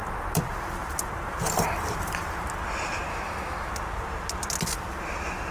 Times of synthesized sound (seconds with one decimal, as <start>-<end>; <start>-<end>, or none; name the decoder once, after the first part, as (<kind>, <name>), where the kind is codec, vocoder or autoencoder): 3.1-3.7 (autoencoder, DAC-VAE)